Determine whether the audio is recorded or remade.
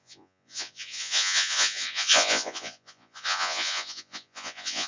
remade